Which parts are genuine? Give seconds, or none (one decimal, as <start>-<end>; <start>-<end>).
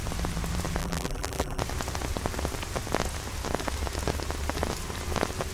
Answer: 0.0-0.8; 1.6-5.5